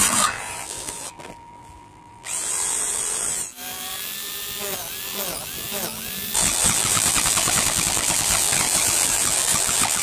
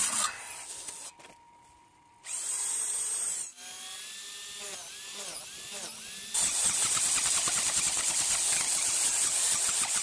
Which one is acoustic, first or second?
second